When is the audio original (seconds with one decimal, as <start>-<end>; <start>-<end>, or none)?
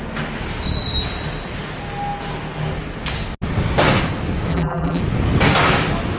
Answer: 0.0-4.5; 5.0-6.2